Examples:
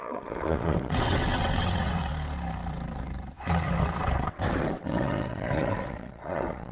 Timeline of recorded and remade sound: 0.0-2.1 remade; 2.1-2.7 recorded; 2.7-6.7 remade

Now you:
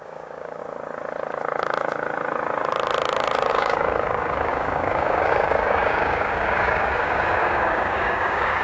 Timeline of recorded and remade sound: 0.0-0.6 remade; 0.6-3.5 recorded; 3.5-8.6 remade

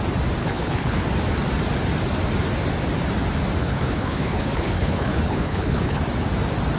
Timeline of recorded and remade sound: 0.0-0.4 recorded; 0.4-1.0 remade; 1.0-3.6 recorded; 3.6-6.0 remade; 6.0-6.8 recorded

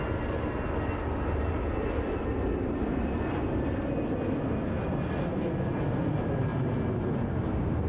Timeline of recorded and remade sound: 0.0-7.9 recorded

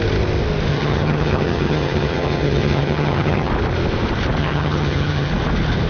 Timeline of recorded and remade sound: 0.0-0.7 recorded; 0.7-3.5 remade; 3.5-4.4 recorded; 4.4-5.3 remade; 5.3-5.9 recorded

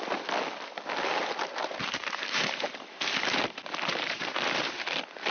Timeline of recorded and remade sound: 0.0-1.4 recorded; 1.4-4.6 remade; 4.6-5.3 recorded

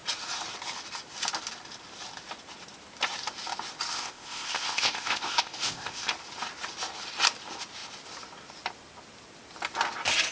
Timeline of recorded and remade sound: 0.0-3.9 recorded; 3.9-6.1 remade; 6.1-10.3 recorded